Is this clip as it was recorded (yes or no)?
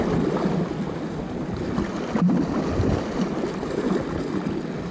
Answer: yes